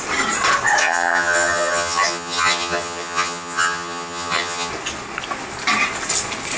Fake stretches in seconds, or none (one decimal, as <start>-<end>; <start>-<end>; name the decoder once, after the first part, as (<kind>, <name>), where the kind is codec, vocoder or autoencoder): 0.8-4.7 (vocoder, HiFi-GAN)